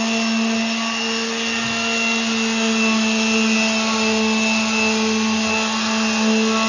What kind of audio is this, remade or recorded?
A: recorded